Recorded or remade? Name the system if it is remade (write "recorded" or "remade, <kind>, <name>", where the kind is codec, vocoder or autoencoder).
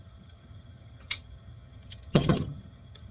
remade, vocoder, HiFi-GAN